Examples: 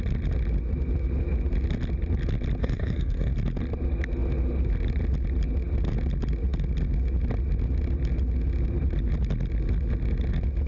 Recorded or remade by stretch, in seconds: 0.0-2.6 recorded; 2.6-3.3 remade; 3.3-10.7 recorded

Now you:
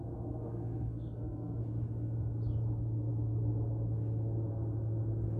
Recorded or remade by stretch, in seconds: 0.0-0.4 recorded; 0.4-1.6 remade; 1.6-5.4 recorded

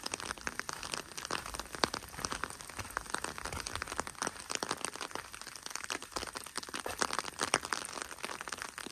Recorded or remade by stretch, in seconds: 0.0-8.9 recorded

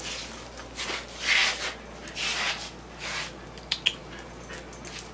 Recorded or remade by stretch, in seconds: 0.0-5.1 recorded